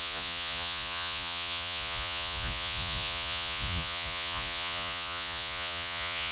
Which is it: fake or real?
fake